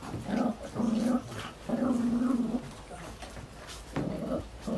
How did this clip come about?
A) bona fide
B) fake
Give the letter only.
A